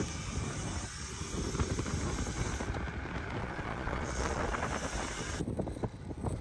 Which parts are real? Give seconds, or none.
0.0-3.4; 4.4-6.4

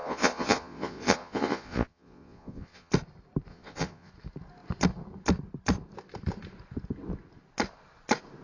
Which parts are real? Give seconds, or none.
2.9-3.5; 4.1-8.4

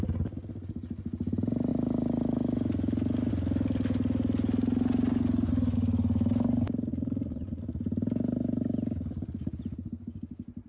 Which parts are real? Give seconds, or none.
0.0-6.9; 7.6-10.7

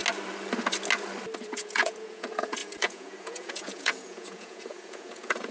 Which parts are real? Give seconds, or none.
0.0-1.5

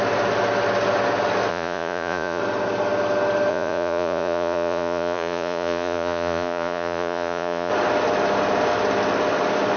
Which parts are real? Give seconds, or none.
0.0-1.5; 2.4-3.5; 7.7-9.8

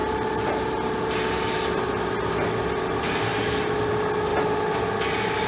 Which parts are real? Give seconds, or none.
0.0-5.5

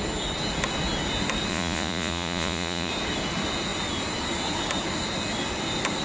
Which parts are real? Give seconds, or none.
0.0-1.5; 2.9-6.0

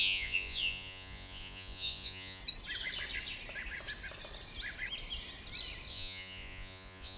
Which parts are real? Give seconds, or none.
2.4-5.9